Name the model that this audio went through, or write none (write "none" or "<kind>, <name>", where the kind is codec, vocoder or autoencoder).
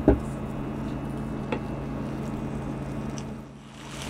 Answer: none